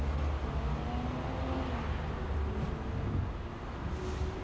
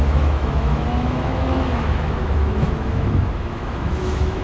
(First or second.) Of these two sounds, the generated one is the second